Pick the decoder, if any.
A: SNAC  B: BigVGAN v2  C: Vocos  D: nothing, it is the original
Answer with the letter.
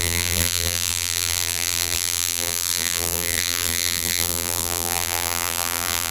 B